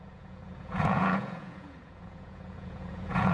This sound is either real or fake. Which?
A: fake